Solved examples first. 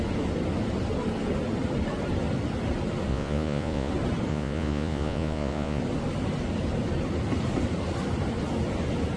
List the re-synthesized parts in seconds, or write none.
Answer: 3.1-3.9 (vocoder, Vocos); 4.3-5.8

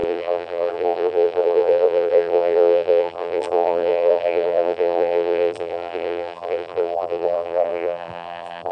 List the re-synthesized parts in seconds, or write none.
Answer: 0.0-8.7 (vocoder, BigVGAN v2)

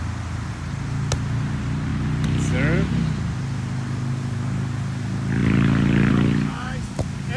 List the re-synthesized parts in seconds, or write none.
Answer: none

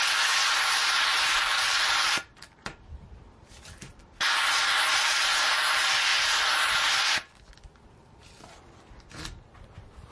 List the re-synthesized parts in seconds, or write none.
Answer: 1.1-4.0 (vocoder, BigVGAN v2)

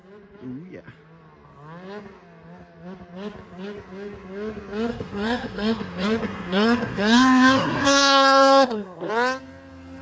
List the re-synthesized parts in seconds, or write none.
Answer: 4.9-9.1 (codec, SNAC)

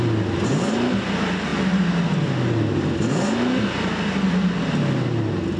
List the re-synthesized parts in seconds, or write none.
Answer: none

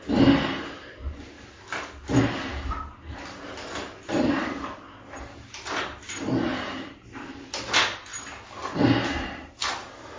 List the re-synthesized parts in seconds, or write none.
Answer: none